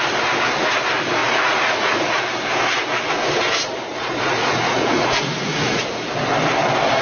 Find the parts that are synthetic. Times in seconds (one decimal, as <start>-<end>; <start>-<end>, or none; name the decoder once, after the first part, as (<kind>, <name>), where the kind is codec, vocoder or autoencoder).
1.2-2.2 (vocoder, Vocos); 3.9-5.8